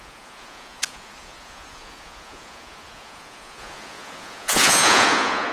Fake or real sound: fake